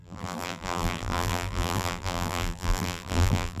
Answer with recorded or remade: remade